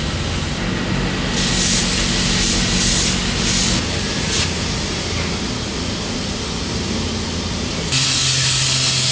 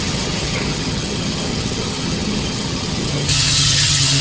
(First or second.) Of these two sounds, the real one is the first